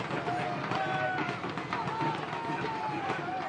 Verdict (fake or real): real